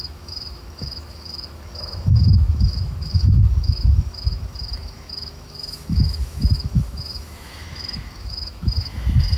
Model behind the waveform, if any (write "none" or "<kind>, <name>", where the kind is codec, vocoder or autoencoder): autoencoder, DAC-VAE